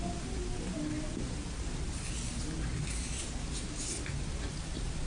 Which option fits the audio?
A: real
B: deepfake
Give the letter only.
A